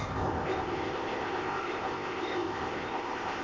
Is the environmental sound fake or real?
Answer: fake